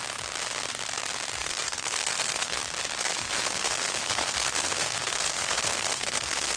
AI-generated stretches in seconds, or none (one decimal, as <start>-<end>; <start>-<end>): 1.4-2.6; 3.0-6.6